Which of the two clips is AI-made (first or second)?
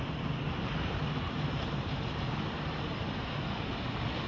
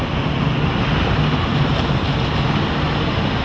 first